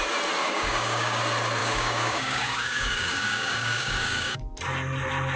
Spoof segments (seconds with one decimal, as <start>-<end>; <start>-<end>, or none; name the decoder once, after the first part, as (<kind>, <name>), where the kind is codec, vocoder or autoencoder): 0.4-1.2 (codec, DAC); 1.6-4.4